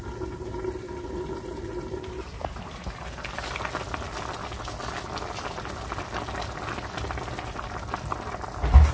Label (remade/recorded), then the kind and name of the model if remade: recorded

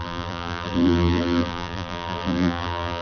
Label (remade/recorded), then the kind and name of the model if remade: remade, vocoder, BigVGAN v2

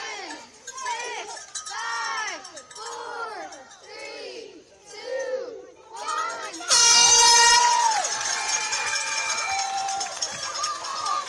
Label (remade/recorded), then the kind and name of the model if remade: remade, vocoder, Vocos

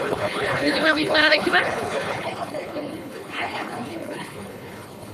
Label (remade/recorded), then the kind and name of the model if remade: remade, codec, HILCodec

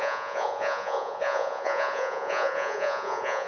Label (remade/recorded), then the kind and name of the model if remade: remade, vocoder, Vocos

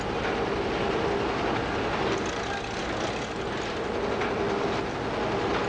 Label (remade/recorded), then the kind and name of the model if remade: recorded